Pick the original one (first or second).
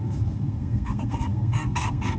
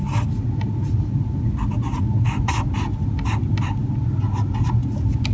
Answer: second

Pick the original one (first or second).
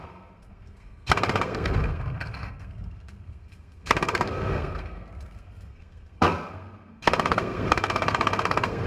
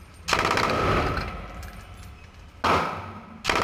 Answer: second